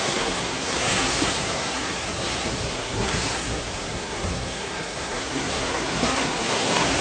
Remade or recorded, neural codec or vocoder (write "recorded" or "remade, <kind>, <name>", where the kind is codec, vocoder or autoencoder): remade, codec, SNAC